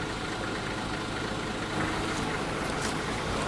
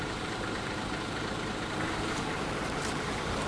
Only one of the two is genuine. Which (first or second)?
first